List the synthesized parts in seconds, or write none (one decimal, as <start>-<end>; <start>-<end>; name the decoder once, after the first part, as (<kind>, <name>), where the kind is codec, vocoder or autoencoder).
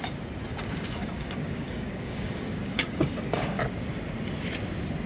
0.5-3.6 (codec, DAC)